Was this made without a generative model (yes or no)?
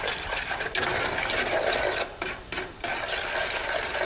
yes